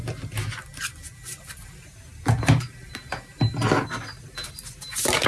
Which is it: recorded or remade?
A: recorded